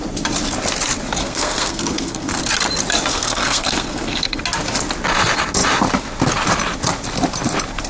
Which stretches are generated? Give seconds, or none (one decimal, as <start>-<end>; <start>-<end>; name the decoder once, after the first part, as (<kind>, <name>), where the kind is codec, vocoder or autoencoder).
1.2-2.4 (codec, SNAC); 3.1-4.4